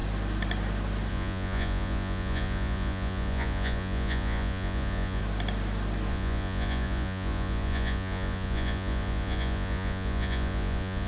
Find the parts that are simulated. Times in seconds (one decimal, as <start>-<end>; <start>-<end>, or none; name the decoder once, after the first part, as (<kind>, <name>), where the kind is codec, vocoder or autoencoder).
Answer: 1.1-5.2 (vocoder, Vocos); 6.1-11.1